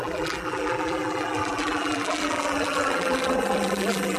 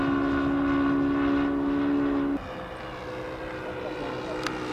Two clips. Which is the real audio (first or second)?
second